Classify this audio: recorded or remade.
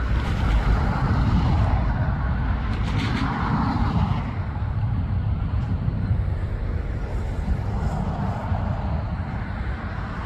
remade